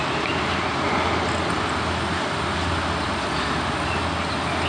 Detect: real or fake real